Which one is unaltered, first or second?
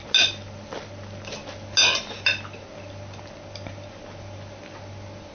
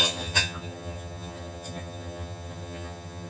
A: first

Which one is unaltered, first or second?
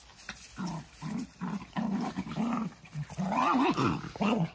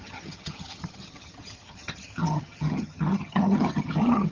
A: first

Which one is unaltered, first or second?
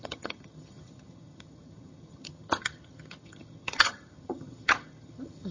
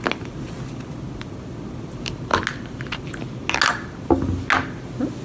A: second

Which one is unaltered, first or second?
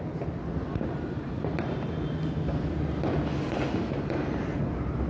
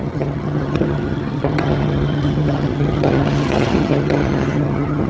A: first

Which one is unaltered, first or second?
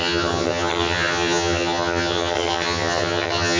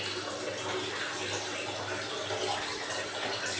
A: second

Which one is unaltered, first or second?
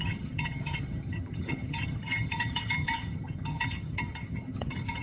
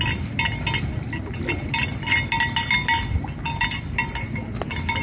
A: second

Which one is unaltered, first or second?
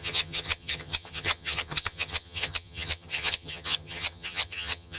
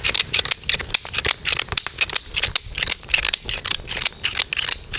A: second